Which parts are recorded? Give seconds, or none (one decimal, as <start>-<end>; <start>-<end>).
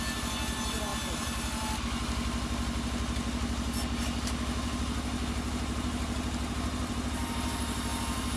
0.0-0.9; 1.8-8.4